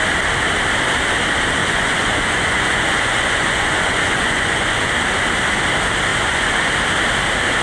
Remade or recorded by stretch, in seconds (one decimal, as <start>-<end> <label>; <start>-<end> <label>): 0.0-1.6 recorded; 1.6-4.9 remade; 4.9-6.1 recorded; 6.1-6.7 remade; 6.7-7.6 recorded